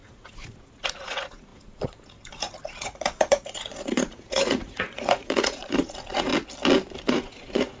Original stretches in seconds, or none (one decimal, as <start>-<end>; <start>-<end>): 6.3-7.0